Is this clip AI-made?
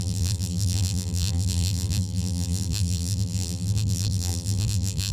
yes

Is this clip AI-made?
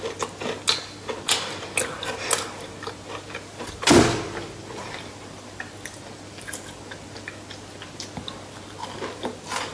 no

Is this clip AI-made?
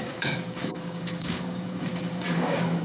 yes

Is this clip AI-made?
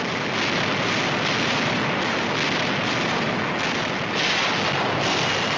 no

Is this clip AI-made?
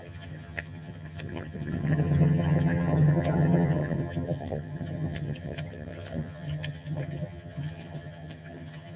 yes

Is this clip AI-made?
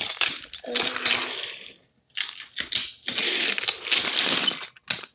no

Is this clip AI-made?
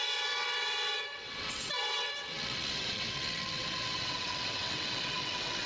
yes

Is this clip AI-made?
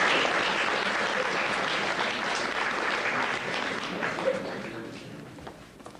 no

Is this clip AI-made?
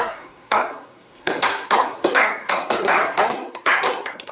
yes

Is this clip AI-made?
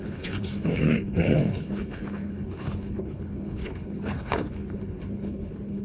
yes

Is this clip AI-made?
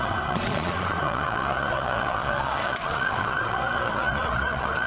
yes